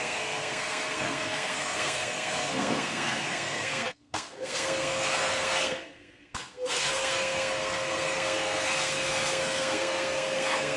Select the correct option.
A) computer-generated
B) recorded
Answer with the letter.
A